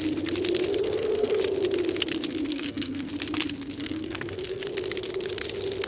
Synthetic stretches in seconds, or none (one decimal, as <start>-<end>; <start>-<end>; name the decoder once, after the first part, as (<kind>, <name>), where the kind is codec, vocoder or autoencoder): 0.7-1.4 (codec, SNAC); 2.5-3.1; 3.8-4.6